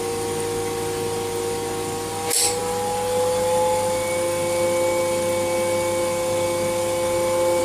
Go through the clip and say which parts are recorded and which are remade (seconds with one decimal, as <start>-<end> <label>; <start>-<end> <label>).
0.0-7.6 recorded

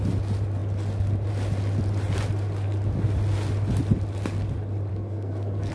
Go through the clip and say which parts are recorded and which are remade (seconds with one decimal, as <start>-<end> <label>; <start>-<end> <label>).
0.0-4.9 recorded; 4.9-5.7 remade

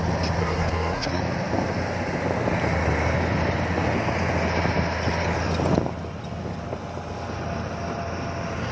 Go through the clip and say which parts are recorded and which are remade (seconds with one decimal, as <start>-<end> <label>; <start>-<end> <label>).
0.0-0.4 recorded; 0.4-1.2 remade; 1.2-8.7 recorded